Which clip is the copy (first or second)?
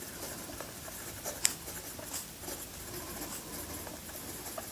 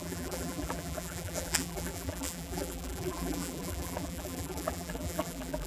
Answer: second